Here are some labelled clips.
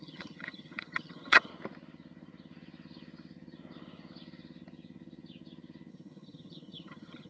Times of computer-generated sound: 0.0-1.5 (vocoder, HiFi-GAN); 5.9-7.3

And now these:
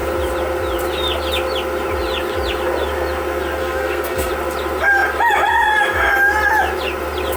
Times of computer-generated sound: 3.6-4.3 (codec, SNAC)

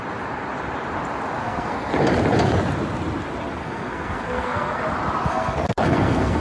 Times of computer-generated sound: 1.4-1.9 (codec, SNAC); 3.6-4.8; 5.3-6.4